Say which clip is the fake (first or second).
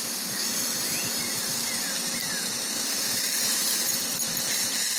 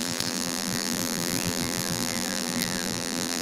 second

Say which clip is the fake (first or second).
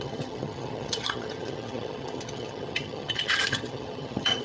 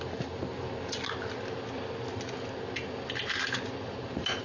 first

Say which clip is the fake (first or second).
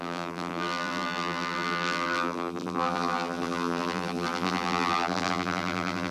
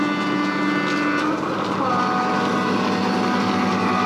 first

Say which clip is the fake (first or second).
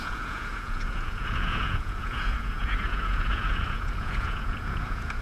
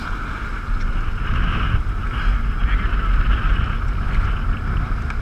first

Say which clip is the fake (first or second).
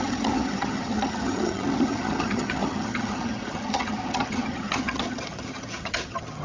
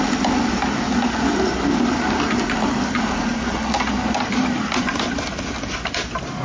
first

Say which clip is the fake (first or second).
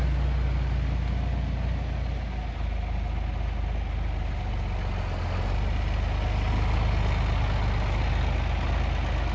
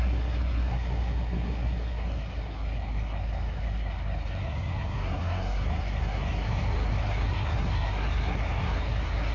second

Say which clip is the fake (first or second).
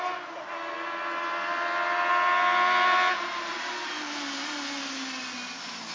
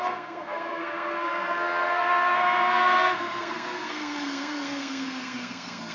second